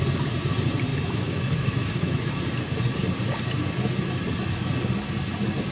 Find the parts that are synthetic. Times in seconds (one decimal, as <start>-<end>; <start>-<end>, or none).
0.9-2.3